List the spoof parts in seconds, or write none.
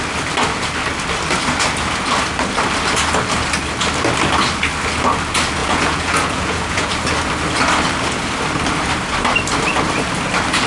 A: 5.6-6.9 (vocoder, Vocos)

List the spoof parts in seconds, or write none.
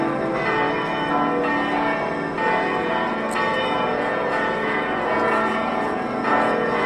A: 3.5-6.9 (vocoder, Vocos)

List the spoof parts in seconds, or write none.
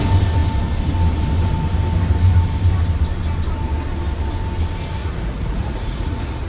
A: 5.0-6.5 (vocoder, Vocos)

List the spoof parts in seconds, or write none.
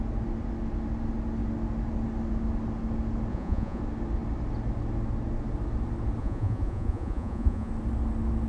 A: 3.3-3.8 (vocoder, Vocos); 6.2-7.7